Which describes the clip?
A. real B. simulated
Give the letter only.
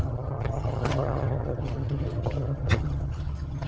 B